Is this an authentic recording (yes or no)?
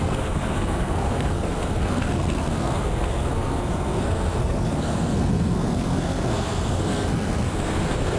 no